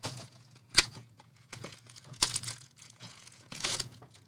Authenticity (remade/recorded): remade